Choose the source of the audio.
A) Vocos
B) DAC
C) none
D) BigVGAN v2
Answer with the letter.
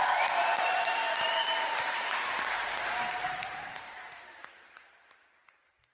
D